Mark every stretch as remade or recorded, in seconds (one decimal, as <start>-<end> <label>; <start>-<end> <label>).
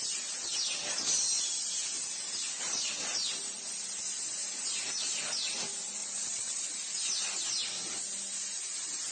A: 0.0-6.0 recorded; 6.0-6.6 remade; 6.6-9.1 recorded